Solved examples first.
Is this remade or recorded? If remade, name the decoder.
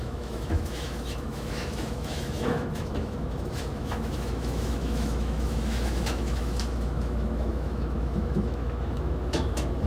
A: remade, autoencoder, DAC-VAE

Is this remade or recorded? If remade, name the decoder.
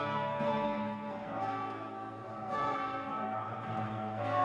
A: remade, codec, SNAC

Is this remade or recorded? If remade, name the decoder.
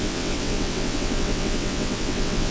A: remade, vocoder, WaveNeXt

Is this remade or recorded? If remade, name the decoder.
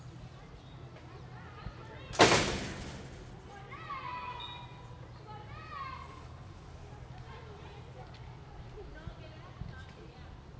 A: recorded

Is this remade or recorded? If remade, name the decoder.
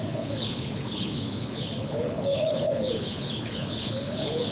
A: remade, codec, HILCodec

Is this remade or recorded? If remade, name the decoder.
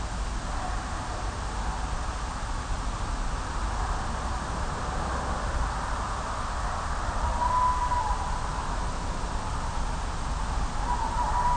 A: recorded